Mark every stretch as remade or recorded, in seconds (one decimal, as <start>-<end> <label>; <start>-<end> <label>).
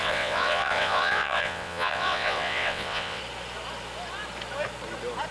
0.0-3.2 remade; 3.2-5.3 recorded